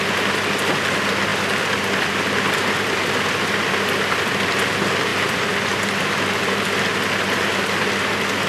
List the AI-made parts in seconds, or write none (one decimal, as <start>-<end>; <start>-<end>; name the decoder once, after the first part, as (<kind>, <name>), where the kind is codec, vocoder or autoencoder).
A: 1.3-4.3 (vocoder, BigVGAN v2); 5.1-6.2